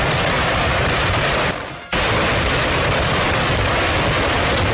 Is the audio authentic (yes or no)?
yes